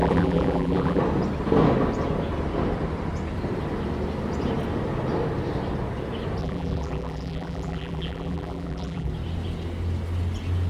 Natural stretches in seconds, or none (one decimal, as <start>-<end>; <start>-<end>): 1.0-6.4; 9.1-10.7